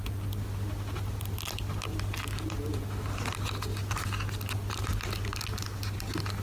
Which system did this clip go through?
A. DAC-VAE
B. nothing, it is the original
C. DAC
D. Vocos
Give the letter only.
B